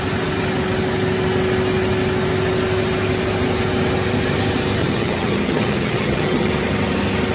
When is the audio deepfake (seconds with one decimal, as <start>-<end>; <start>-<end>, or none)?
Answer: 4.8-6.5